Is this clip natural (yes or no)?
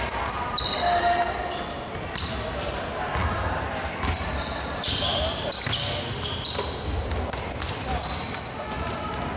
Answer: yes